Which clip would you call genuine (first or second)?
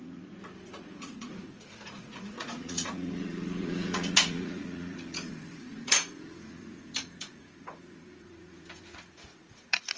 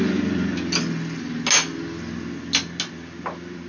second